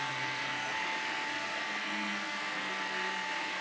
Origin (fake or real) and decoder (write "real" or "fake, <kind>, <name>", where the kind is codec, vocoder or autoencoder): fake, codec, SNAC